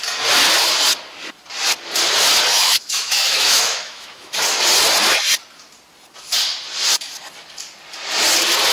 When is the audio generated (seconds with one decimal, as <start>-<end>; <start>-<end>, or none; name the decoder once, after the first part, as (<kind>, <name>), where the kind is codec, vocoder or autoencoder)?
2.5-4.4 (autoencoder, DAC-VAE)